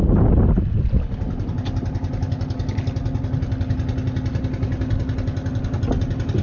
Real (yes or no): yes